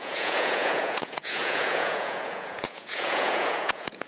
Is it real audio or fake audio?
fake